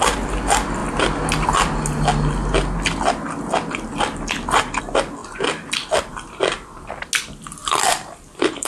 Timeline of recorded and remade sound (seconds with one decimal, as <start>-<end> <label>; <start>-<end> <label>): 0.0-7.6 recorded; 7.6-8.7 remade